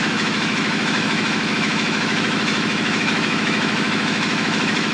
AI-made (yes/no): yes